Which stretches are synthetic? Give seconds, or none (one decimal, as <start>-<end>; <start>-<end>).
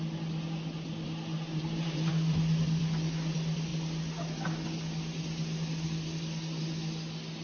1.5-2.1